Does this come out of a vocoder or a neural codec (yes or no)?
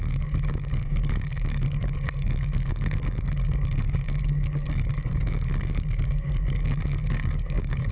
yes